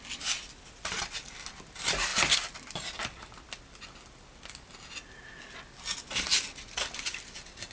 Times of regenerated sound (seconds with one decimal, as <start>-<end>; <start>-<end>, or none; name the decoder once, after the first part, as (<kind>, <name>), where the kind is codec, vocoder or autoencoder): none